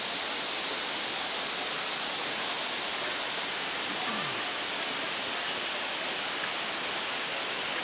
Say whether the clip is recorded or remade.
recorded